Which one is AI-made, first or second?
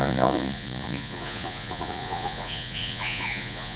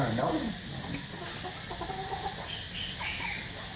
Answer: first